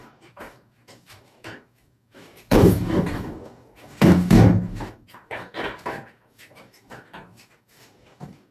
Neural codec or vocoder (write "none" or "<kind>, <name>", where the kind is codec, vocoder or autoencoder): codec, DAC